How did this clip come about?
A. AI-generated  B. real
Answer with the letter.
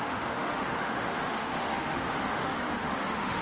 A